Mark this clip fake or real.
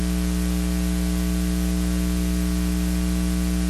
real